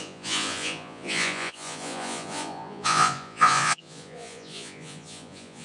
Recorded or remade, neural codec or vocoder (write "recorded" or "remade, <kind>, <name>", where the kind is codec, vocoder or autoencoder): remade, vocoder, Vocos